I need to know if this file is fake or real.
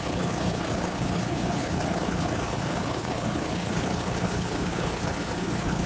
fake